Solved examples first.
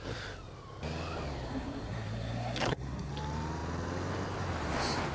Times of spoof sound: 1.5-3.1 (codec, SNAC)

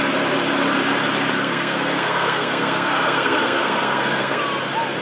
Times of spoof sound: 1.4-4.4 (codec, SNAC)

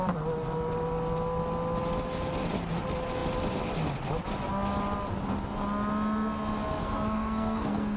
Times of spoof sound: 6.8-8.0 (codec, SNAC)

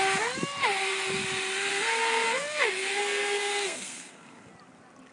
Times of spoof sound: 1.7-4.5 (codec, SNAC)